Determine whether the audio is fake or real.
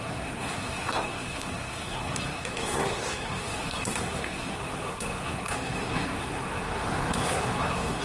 fake